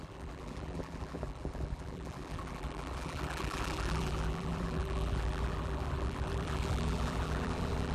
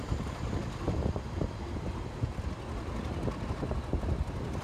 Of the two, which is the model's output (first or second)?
first